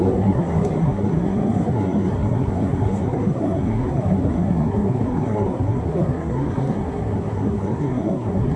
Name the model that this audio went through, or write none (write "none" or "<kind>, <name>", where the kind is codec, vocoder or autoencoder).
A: codec, SNAC